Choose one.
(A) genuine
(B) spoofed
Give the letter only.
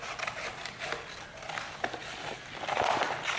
A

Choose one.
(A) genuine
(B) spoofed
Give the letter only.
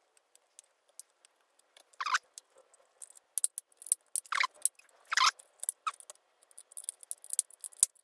A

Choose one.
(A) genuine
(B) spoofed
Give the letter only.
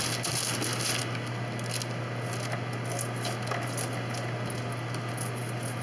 A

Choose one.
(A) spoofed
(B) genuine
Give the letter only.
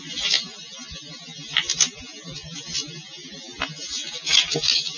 B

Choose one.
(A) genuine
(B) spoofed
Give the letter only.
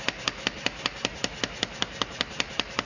A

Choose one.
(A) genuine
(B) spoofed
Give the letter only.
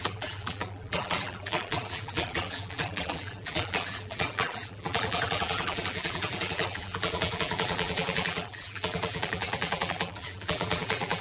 B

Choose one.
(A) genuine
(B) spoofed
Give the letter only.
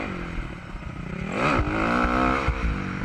A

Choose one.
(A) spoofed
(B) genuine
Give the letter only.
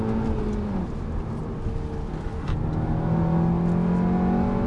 B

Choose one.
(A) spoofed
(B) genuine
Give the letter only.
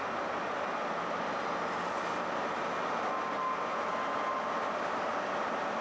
B